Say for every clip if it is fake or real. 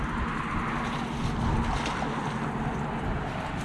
real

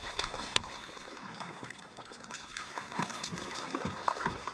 fake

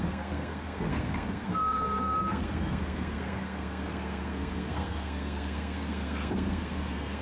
fake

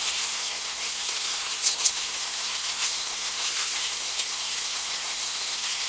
fake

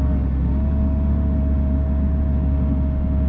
real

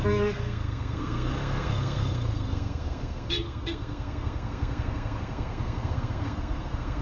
fake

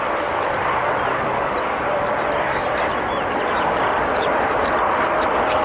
fake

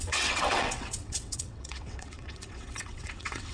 fake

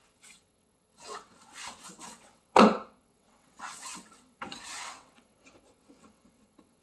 fake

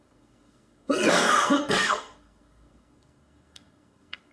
fake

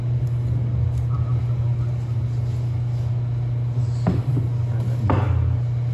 real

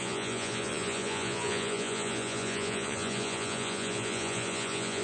fake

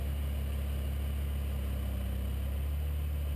real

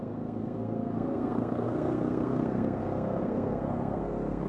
fake